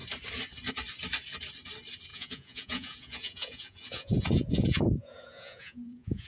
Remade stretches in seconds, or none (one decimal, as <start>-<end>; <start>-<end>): 2.1-6.3